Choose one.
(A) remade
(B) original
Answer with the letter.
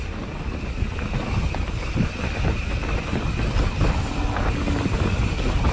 B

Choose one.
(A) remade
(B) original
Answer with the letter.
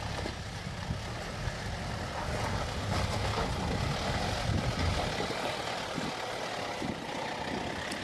B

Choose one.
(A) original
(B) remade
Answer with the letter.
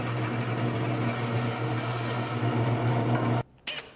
A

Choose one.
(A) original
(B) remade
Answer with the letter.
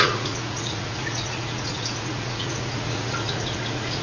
B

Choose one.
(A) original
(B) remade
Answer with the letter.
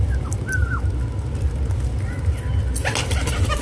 A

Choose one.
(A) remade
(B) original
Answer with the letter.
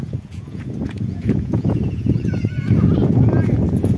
A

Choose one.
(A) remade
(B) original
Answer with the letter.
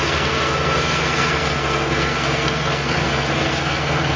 A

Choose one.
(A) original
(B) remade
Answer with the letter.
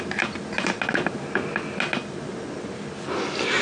A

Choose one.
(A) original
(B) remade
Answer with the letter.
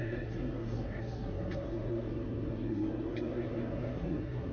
B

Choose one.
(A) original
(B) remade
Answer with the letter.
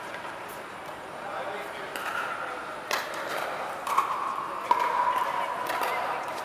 A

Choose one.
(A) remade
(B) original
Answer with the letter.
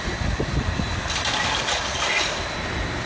B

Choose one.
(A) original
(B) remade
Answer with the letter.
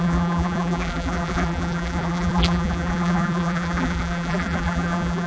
B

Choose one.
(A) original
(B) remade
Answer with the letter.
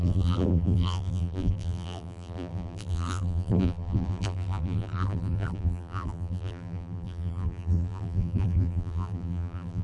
B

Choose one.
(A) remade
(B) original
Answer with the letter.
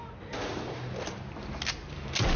B